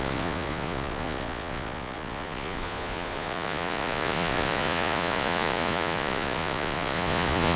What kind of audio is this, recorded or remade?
remade